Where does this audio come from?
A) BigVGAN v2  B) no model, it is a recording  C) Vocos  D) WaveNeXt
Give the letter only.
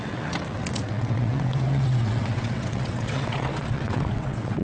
D